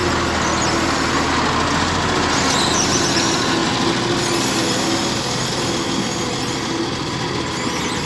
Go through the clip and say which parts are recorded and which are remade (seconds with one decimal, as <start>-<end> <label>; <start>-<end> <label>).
0.0-8.1 recorded